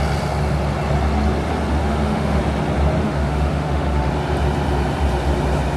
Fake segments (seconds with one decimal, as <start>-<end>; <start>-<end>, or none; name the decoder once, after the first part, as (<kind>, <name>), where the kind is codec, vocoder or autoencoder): 1.8-2.4 (autoencoder, DAC-VAE); 3.0-4.1